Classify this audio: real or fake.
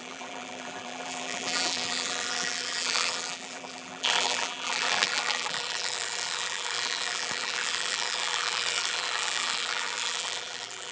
fake